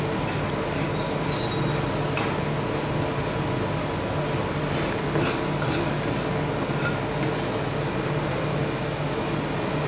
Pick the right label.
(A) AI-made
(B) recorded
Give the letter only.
B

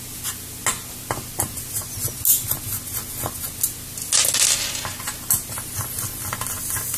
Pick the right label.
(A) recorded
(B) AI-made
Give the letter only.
A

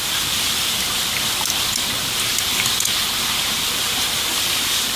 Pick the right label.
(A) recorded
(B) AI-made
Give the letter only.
B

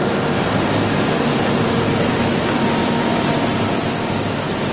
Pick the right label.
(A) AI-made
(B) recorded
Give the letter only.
B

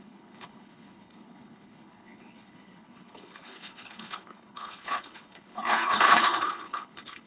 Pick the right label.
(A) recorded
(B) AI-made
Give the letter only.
B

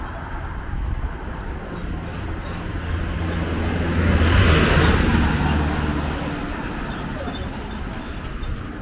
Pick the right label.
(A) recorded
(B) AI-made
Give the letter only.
A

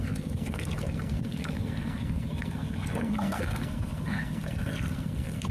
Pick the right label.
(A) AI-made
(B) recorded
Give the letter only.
A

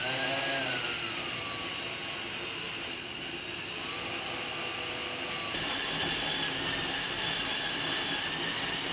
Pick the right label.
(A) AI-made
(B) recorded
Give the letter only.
B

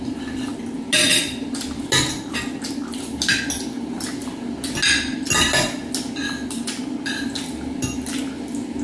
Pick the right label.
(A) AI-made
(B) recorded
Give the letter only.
B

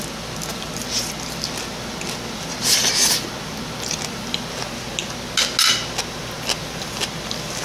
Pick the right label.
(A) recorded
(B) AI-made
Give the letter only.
A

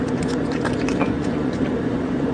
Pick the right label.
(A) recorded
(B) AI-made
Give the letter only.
B